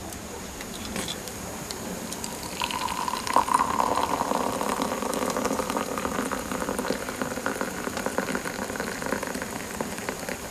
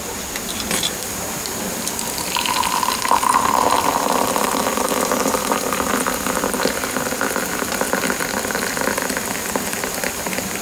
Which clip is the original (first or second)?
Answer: second